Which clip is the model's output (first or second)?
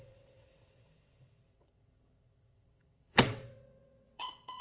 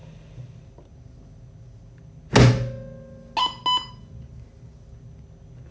first